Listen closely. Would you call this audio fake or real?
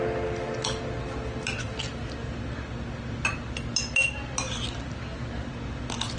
real